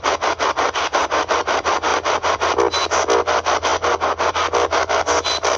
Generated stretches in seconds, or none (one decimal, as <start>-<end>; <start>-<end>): 1.9-2.6